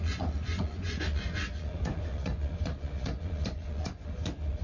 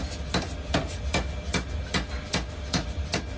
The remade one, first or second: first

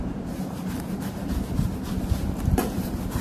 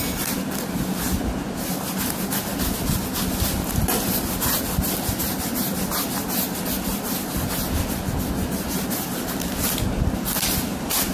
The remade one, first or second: first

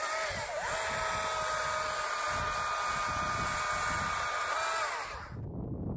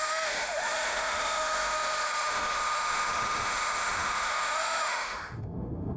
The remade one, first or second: second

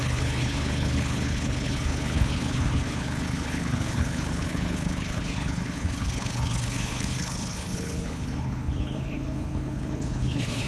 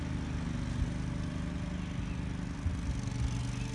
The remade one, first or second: first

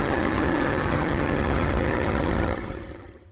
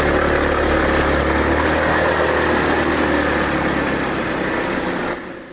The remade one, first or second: first